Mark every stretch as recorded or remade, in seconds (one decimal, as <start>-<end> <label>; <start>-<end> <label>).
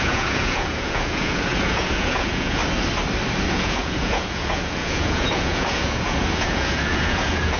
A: 0.0-2.6 remade; 2.6-3.5 recorded; 3.5-7.6 remade